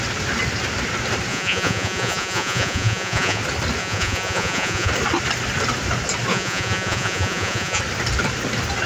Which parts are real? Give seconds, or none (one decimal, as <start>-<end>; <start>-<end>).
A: 0.0-1.3; 3.4-3.8; 4.9-6.3; 7.8-8.9